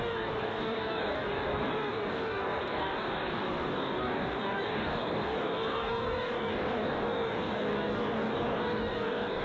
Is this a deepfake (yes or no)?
yes